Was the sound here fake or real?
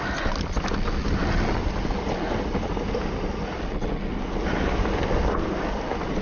real